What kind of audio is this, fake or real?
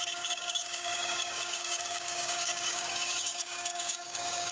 fake